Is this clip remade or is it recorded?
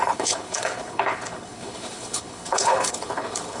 remade